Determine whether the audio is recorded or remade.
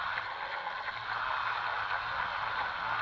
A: recorded